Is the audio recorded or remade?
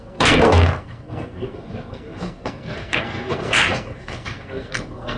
remade